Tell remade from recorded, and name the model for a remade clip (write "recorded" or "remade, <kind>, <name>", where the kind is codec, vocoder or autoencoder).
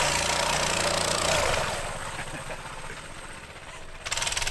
recorded